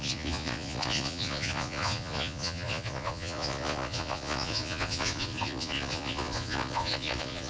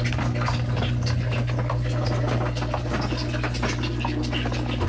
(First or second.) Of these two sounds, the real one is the second